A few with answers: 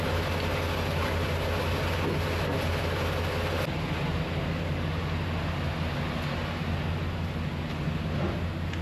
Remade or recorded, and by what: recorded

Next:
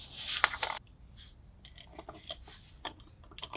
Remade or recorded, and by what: recorded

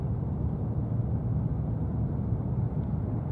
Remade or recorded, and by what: recorded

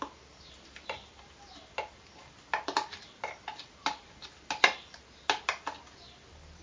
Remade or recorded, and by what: recorded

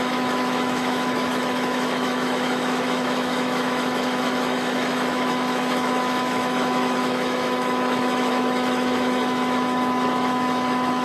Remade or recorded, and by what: remade, autoencoder, DAC-VAE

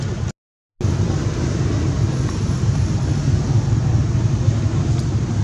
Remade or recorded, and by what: recorded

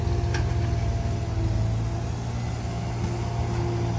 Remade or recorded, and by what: recorded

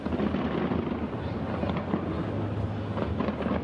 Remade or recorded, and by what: recorded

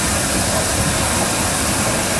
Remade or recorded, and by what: recorded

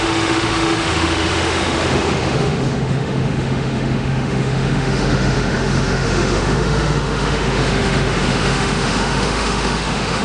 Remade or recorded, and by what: remade, autoencoder, DAC-VAE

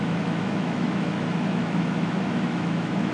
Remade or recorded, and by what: remade, autoencoder, DAC-VAE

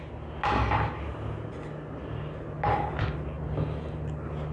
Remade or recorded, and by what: recorded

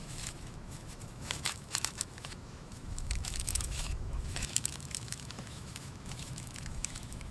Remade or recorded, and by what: remade, autoencoder, DAC-VAE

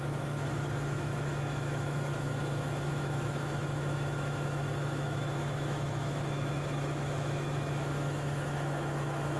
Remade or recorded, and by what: remade, autoencoder, DAC-VAE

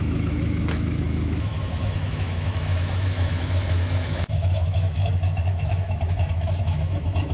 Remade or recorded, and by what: remade, autoencoder, DAC-VAE